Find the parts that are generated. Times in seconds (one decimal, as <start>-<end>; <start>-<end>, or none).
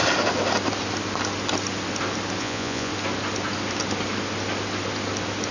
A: 2.4-2.9